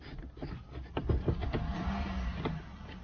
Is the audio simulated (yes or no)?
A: no